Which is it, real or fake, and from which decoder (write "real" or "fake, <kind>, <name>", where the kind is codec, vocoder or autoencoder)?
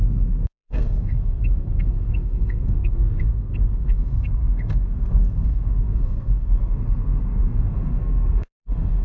fake, codec, SNAC